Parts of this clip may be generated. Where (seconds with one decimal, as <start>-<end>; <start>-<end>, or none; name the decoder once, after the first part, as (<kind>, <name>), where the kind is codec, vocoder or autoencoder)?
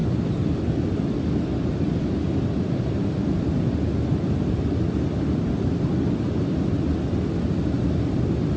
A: none